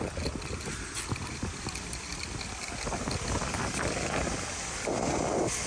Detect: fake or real real